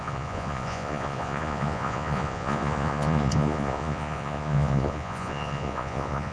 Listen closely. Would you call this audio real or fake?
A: fake